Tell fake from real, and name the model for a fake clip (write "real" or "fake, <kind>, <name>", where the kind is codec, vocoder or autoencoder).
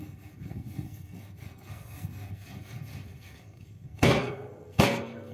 fake, codec, SNAC